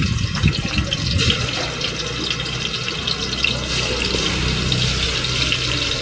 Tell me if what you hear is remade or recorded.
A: recorded